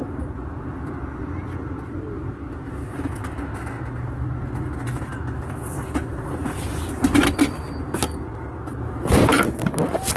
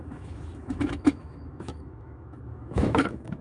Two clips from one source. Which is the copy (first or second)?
second